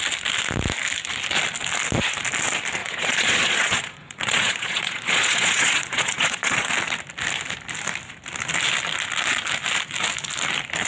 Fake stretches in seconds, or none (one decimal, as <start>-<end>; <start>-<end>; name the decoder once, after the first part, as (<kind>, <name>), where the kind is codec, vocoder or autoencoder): 2.8-6.7 (vocoder, Vocos)